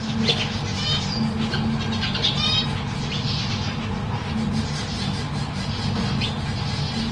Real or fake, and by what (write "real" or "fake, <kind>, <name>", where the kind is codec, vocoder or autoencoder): real